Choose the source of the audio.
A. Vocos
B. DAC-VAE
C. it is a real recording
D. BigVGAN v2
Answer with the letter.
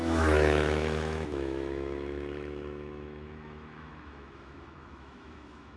B